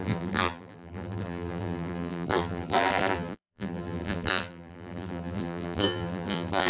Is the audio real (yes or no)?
no